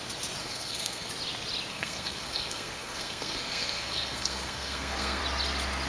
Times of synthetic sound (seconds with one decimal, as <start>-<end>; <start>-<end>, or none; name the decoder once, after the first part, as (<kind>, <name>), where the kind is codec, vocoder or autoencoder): 0.4-1.1 (codec, SNAC); 1.7-5.2